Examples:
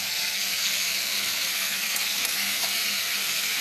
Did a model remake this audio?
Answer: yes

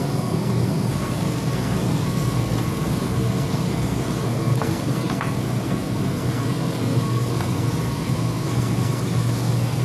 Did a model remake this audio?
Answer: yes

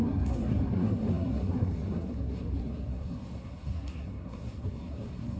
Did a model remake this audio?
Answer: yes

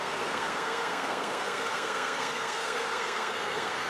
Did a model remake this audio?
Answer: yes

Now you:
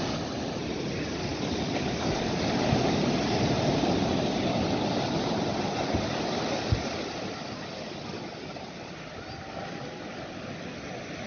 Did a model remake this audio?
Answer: no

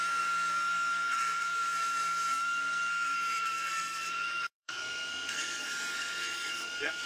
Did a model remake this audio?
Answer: yes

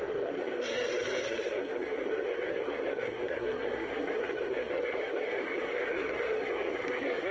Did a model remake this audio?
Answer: yes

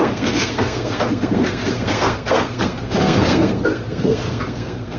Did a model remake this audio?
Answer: yes